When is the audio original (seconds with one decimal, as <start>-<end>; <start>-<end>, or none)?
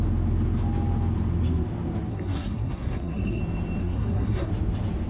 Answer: 0.0-2.1; 3.4-3.8; 4.5-5.1